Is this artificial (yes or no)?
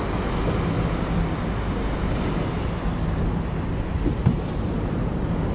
no